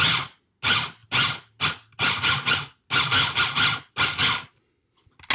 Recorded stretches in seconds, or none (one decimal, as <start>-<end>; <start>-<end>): 0.0-5.3